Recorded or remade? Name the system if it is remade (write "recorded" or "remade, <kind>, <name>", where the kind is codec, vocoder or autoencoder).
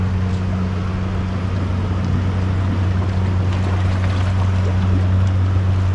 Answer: recorded